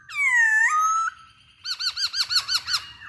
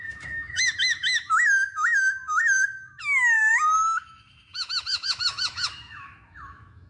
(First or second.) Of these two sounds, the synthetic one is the second